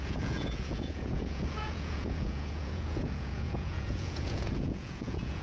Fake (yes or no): yes